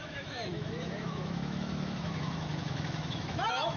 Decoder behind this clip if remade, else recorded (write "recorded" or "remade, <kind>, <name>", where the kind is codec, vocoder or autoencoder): remade, autoencoder, DAC-VAE